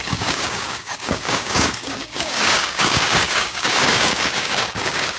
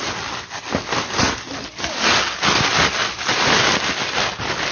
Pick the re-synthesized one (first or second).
first